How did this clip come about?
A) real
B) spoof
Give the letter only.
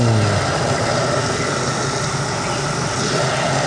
A